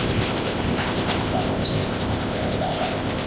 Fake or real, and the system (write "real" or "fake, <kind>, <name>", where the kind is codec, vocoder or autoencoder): fake, codec, ZipCodec